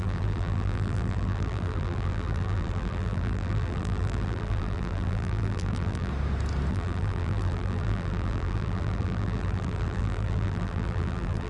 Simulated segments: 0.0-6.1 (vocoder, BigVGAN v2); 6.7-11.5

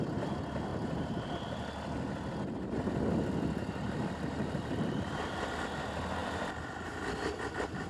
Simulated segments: 0.7-1.3 (vocoder, BigVGAN v2); 3.6-5.3

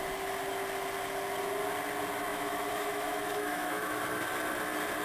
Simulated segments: 2.3-4.0 (autoencoder, DAC-VAE)